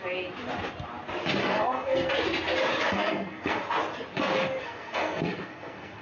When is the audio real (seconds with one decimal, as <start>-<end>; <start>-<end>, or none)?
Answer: 0.0-1.4; 2.1-2.9; 3.6-4.6